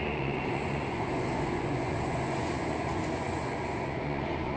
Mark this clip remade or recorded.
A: remade